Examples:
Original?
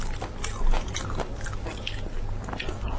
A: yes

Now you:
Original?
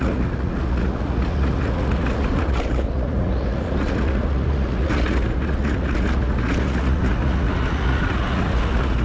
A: no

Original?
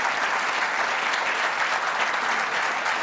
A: yes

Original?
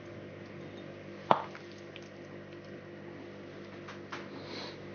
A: yes